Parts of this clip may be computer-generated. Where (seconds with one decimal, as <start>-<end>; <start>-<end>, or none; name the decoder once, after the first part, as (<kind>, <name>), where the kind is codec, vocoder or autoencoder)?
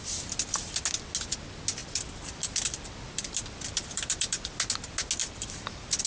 1.8-4.4 (vocoder, BigVGAN v2); 5.2-6.1